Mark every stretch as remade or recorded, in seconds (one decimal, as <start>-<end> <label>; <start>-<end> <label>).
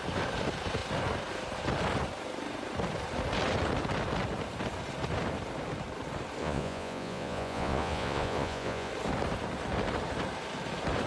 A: 0.0-6.4 recorded; 6.4-8.9 remade; 8.9-11.1 recorded